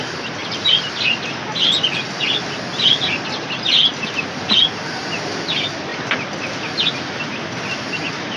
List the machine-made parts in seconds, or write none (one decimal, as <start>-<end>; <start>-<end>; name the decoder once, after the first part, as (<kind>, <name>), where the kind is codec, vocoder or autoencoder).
none